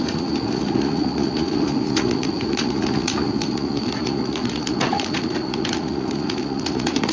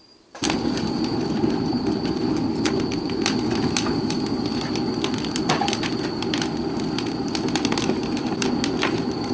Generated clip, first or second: first